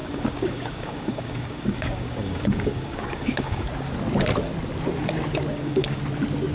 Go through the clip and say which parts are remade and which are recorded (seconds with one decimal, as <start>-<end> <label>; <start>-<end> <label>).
0.0-3.7 remade; 3.7-5.5 recorded; 5.5-6.0 remade; 6.0-6.5 recorded